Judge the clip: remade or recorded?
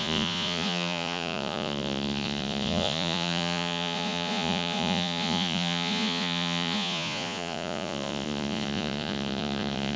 remade